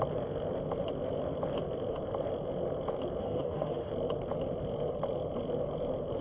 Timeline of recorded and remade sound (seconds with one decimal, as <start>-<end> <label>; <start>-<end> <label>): 0.0-3.2 recorded; 3.2-3.9 remade; 3.9-6.2 recorded